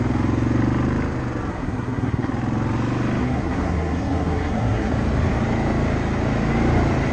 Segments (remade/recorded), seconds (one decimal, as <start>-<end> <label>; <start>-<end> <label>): 0.0-1.5 recorded; 1.5-2.3 remade; 2.3-3.2 recorded; 3.2-4.9 remade; 4.9-7.1 recorded